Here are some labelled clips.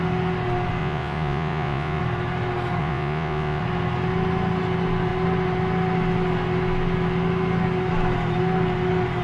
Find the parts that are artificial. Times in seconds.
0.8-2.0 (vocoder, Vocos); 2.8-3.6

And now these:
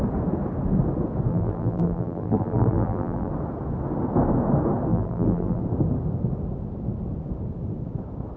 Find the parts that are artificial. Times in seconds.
1.3-3.3 (vocoder, BigVGAN v2); 4.9-5.6

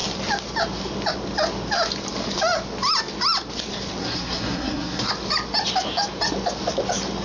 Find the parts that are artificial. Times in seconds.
4.0-5.1 (codec, SNAC)

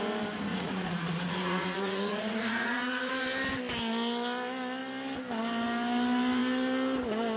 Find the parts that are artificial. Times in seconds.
0.5-3.2 (vocoder, Vocos)

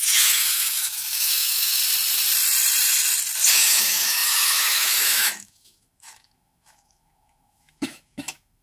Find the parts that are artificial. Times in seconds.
0.0-1.8 (autoencoder, DAC-VAE); 3.5-8.6

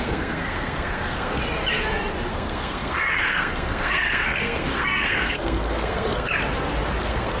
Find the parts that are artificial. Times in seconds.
0.0-1.4 (codec, SNAC); 2.3-6.3; 7.0-7.4